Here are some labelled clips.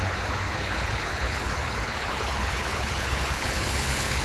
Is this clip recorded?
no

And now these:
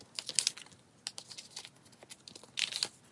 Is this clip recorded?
yes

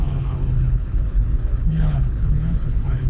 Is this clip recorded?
no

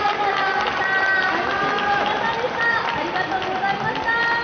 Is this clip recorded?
yes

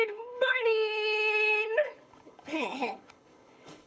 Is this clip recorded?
no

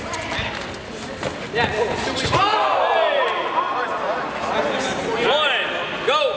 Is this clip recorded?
yes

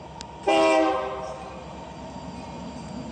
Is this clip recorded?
yes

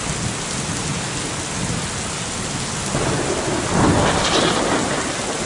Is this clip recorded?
yes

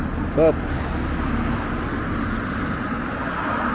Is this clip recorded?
yes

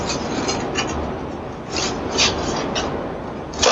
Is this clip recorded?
yes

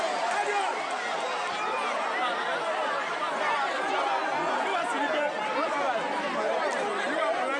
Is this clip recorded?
yes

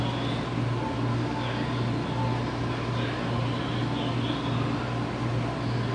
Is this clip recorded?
yes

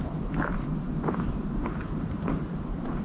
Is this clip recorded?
yes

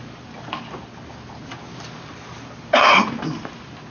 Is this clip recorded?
yes